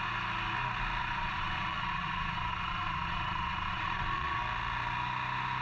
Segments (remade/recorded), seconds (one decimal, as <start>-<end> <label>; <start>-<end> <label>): 0.0-1.0 recorded; 1.0-4.4 remade; 4.4-5.6 recorded